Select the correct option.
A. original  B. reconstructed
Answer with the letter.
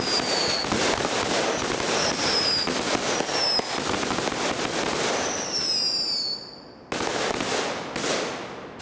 A